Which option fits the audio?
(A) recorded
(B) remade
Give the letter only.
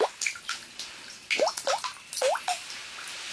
A